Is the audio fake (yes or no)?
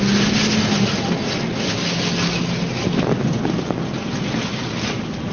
no